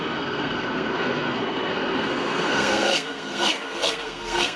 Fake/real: fake